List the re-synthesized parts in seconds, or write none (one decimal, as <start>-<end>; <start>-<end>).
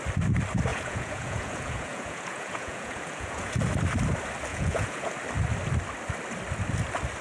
0.7-3.6; 4.5-5.1